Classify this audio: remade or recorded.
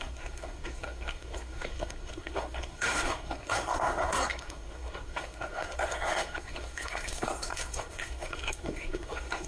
remade